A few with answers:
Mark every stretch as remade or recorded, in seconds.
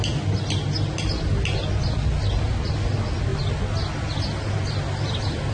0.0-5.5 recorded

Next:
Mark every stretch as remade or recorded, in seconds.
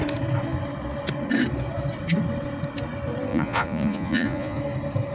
0.0-3.3 recorded; 3.3-4.6 remade; 4.6-5.1 recorded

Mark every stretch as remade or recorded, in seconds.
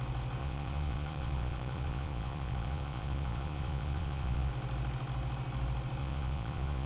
0.0-0.4 recorded; 0.4-4.5 remade; 4.5-6.0 recorded; 6.0-6.9 remade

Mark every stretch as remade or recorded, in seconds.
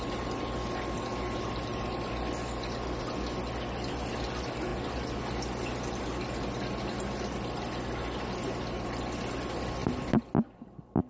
0.0-11.1 recorded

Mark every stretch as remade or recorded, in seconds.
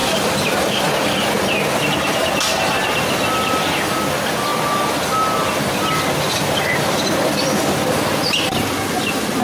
0.0-9.4 recorded